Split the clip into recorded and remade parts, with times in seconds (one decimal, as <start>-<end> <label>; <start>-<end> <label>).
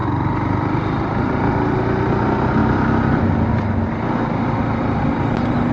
0.0-1.5 remade; 1.5-5.7 recorded